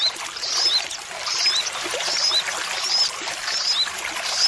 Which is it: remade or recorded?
recorded